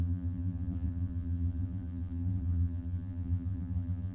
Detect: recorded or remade remade